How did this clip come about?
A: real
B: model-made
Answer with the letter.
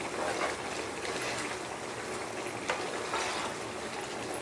A